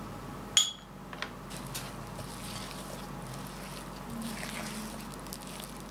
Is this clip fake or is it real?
real